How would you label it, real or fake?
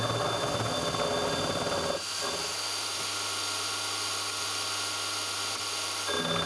real